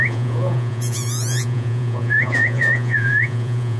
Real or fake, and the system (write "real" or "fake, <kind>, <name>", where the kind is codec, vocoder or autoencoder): fake, vocoder, Vocos